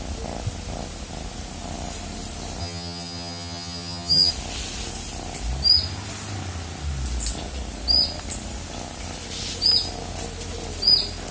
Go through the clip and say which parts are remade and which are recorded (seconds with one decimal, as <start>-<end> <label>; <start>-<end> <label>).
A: 0.0-2.6 recorded; 2.6-4.3 remade; 4.3-11.3 recorded